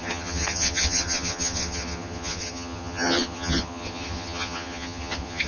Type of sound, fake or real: fake